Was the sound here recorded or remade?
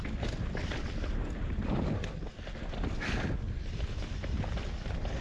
recorded